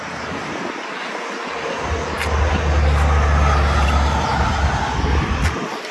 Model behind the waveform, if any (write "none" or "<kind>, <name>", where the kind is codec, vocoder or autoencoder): none